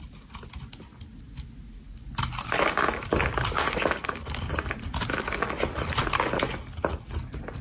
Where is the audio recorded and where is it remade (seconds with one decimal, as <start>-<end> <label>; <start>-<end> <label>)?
0.0-7.6 recorded